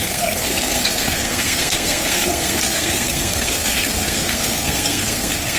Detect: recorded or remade remade